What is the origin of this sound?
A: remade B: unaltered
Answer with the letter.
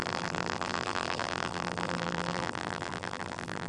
A